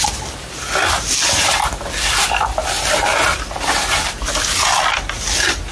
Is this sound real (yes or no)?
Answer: yes